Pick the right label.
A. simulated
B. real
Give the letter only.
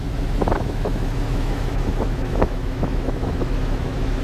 A